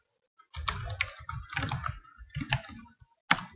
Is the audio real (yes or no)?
yes